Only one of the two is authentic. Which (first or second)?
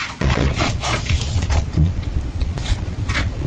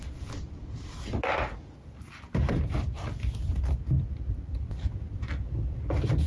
second